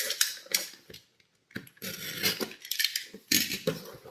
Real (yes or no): yes